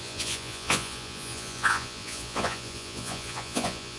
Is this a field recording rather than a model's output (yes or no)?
no